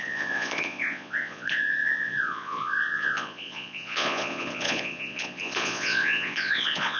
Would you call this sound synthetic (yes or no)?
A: yes